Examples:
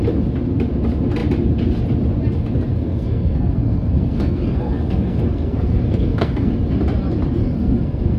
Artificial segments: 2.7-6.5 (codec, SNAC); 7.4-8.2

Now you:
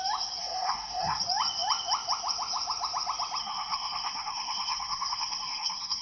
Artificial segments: 0.4-1.2 (codec, SNAC); 3.4-6.0

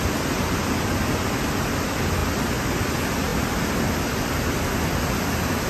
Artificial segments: none

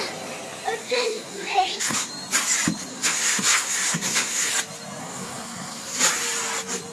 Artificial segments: 0.8-2.1 (codec, SNAC); 2.9-4.5; 5.0-6.0

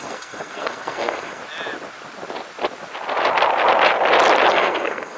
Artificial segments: 0.0-1.4 (codec, SNAC); 4.5-5.2